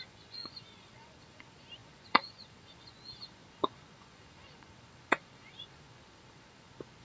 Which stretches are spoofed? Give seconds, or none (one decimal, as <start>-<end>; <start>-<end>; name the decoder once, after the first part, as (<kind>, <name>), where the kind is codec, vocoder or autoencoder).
0.0-7.0 (vocoder, Vocos)